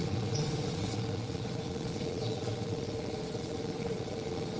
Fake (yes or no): yes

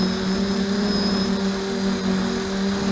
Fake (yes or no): no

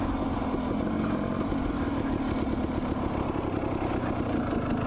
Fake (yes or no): no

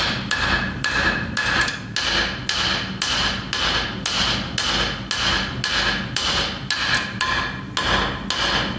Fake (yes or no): no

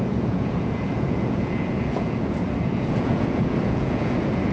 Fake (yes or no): yes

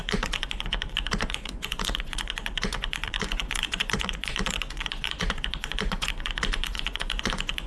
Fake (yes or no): yes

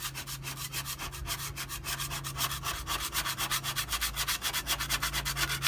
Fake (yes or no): no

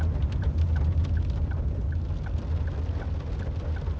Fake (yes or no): no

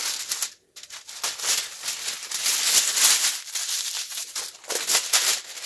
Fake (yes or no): no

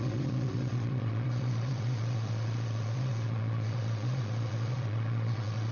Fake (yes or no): yes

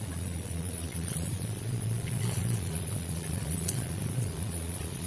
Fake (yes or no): yes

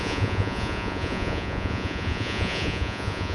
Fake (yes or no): yes